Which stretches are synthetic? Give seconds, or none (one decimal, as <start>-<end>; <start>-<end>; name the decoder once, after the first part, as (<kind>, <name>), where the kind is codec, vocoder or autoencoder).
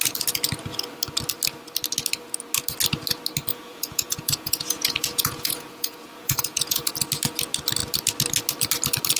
3.5-6.9 (vocoder, Vocos)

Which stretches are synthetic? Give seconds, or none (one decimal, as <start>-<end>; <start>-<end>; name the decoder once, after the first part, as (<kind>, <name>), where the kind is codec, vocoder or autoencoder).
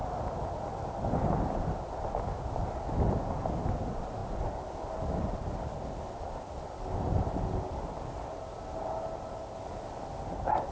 none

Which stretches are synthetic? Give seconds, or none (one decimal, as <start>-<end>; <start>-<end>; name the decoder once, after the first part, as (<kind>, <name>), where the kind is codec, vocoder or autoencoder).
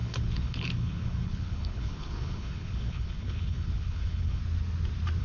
0.0-4.4 (codec, HILCodec)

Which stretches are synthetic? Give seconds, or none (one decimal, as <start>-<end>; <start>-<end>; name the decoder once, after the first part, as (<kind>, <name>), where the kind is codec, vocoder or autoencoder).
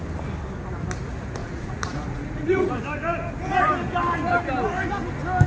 1.4-2.7 (vocoder, Vocos)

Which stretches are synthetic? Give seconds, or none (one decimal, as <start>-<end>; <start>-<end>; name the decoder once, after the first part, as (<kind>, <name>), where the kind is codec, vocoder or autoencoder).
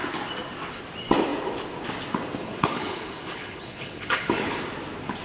2.4-4.6 (codec, HILCodec)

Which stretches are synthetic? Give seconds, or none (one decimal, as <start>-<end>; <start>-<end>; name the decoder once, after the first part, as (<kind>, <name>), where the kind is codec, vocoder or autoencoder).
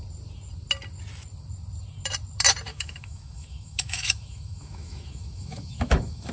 2.7-6.3 (autoencoder, DAC-VAE)